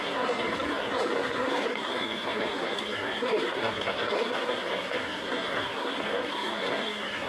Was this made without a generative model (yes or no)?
no